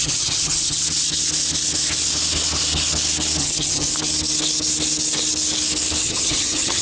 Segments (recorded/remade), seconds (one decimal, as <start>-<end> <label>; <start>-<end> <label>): 0.0-0.8 remade; 0.8-3.4 recorded; 3.4-3.9 remade; 3.9-6.0 recorded; 6.0-6.8 remade